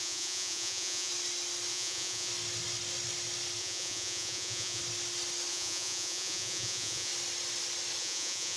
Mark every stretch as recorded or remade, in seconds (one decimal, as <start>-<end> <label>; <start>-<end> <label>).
0.0-1.1 remade; 1.1-1.7 recorded; 1.7-2.3 remade; 2.3-3.6 recorded; 3.6-4.8 remade; 4.8-5.5 recorded; 5.5-7.1 remade; 7.1-8.0 recorded; 8.0-8.6 remade